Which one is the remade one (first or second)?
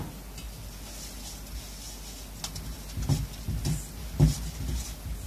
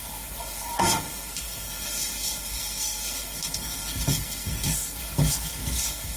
second